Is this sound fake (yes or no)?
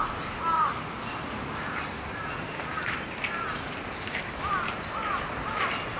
yes